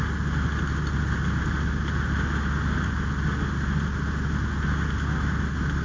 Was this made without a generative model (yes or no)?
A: yes